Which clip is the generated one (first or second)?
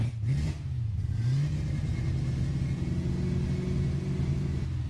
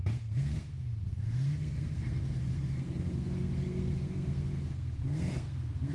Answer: second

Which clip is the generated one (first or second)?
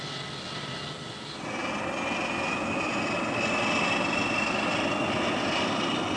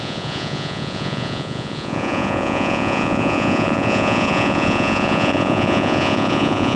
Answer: second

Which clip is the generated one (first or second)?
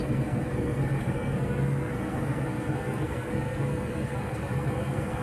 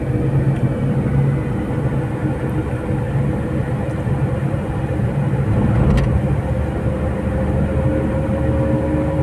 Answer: first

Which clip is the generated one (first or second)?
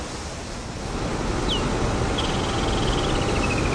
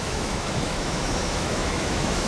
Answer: second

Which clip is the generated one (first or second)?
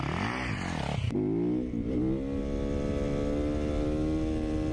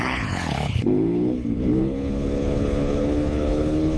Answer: second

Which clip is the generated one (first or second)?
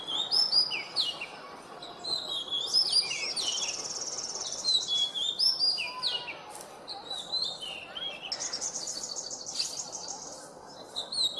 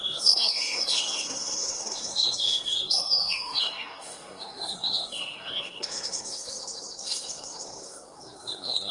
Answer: second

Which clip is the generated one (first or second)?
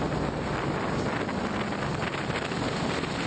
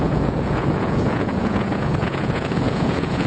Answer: second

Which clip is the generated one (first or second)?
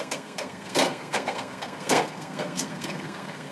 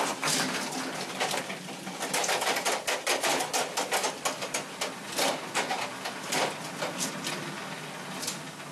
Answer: first